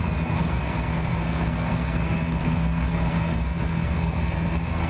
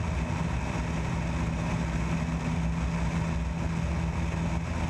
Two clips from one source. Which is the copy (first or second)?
first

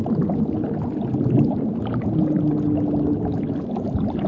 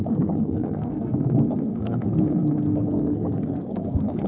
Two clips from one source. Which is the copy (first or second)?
second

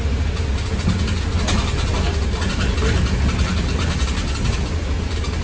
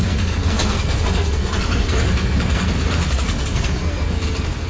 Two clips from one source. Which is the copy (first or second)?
second